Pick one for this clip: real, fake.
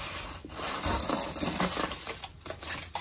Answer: real